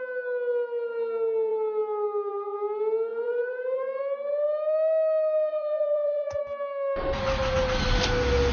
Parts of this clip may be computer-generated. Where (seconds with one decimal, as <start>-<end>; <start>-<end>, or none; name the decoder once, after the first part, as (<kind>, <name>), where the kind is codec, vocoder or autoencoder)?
3.1-4.0 (vocoder, Vocos); 5.5-6.4